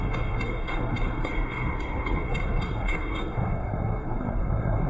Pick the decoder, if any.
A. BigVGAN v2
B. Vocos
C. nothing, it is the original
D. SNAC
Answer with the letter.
D